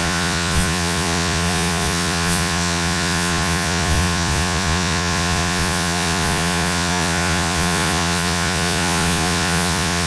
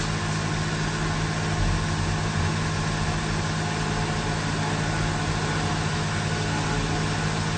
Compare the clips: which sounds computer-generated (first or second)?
first